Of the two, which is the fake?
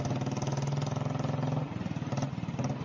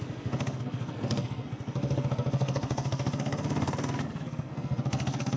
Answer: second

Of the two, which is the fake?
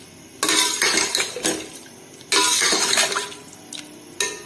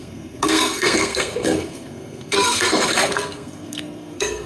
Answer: second